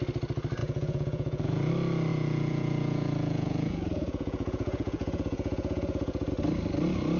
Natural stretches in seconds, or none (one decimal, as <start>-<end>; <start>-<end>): 0.0-0.6; 1.7-2.1; 6.3-7.2